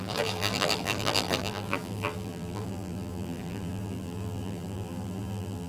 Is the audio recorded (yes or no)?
no